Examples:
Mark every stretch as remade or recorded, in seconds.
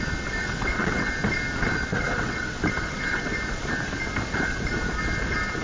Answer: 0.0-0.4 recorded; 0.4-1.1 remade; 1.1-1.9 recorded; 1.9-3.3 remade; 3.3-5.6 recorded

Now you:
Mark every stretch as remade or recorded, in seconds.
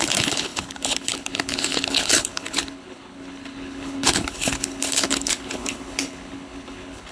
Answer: 0.0-7.1 remade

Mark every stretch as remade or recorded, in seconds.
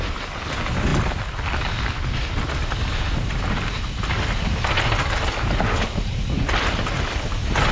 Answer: 0.0-7.7 recorded